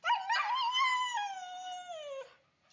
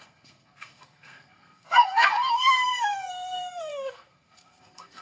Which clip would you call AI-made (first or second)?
second